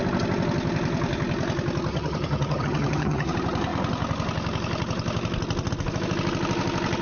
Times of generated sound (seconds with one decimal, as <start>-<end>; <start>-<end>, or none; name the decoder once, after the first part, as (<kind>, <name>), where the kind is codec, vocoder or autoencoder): 1.9-3.3 (vocoder, HiFi-GAN)